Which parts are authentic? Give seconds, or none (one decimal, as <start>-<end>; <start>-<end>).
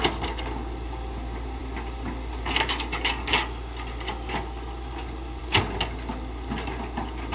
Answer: 0.0-7.3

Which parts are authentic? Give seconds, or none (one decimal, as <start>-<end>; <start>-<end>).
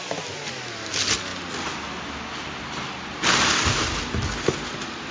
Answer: 0.0-5.1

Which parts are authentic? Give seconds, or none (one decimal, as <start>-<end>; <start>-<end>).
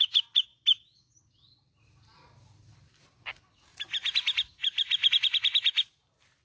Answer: 0.0-6.4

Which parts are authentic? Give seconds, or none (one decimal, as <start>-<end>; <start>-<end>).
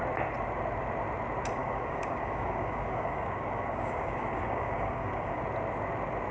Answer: 0.0-1.6; 5.4-6.3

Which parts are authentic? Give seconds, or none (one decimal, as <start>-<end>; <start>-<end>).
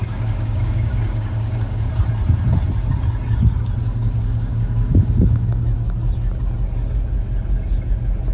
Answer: 1.9-4.0; 5.5-8.3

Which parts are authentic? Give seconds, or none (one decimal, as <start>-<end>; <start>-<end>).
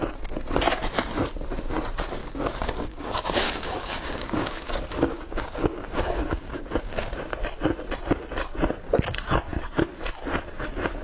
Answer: 0.0-2.2; 7.2-11.0